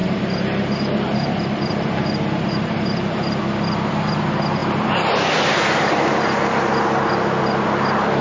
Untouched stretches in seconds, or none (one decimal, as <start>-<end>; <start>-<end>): 3.4-8.2